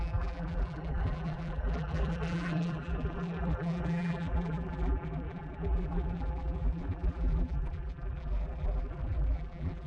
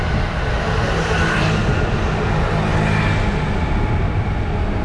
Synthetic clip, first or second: first